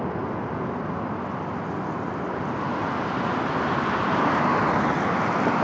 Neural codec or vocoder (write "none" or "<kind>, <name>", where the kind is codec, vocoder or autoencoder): none